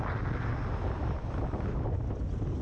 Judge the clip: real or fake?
real